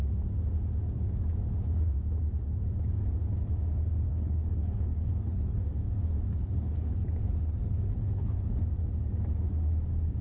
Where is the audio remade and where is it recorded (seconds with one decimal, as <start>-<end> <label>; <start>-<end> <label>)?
0.0-4.1 recorded; 4.1-5.6 remade; 5.6-6.4 recorded; 6.4-8.5 remade; 8.5-10.2 recorded